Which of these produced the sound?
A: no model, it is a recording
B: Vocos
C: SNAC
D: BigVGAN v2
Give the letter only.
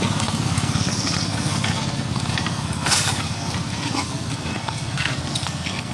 C